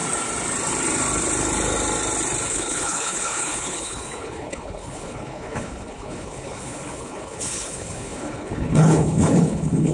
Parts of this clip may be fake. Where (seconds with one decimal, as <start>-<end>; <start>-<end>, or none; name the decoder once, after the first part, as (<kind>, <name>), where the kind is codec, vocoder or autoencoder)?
2.5-9.9 (codec, HILCodec)